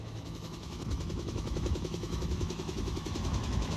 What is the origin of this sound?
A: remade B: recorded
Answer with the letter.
A